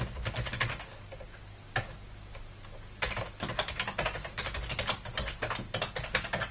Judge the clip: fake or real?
real